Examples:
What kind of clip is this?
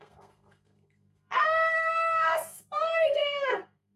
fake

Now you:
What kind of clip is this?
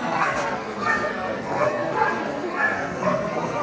fake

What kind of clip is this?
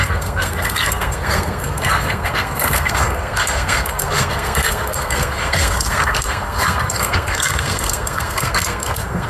fake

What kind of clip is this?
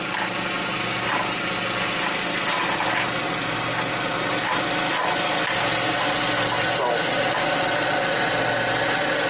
real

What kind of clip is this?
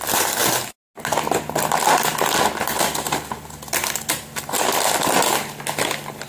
real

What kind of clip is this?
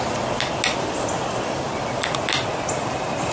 real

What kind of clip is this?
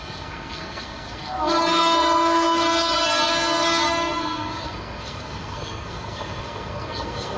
fake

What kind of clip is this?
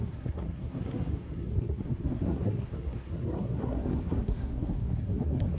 fake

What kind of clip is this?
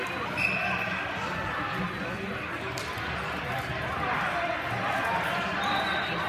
real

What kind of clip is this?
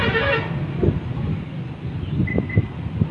real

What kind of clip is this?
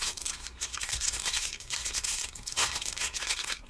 fake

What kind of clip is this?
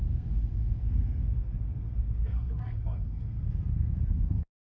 fake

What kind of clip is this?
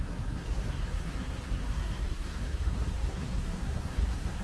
fake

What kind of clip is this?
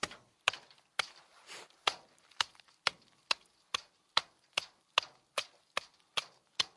real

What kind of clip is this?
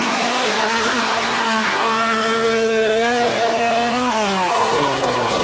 fake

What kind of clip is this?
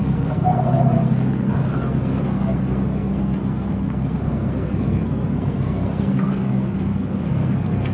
fake